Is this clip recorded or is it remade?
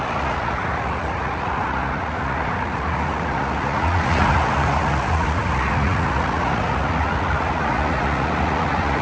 remade